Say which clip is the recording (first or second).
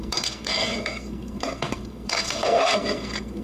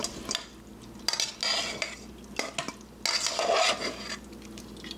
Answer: second